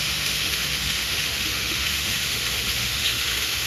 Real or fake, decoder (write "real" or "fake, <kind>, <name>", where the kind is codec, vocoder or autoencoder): fake, autoencoder, DAC-VAE